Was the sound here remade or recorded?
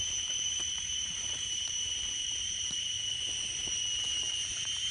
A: remade